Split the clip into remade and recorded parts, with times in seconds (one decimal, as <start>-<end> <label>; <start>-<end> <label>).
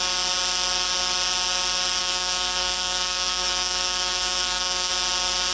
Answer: 0.0-2.0 recorded; 2.0-4.9 remade; 4.9-5.5 recorded